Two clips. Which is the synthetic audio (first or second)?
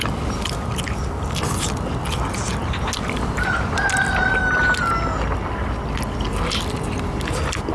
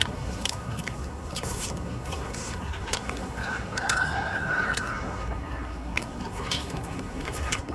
second